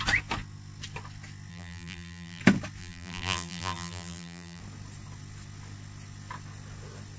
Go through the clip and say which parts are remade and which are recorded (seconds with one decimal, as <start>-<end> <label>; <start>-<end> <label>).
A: 0.0-1.5 recorded; 1.5-2.4 remade; 2.4-2.8 recorded; 2.8-4.6 remade; 4.6-7.2 recorded